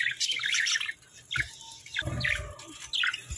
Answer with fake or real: real